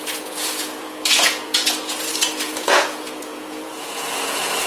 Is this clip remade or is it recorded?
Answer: remade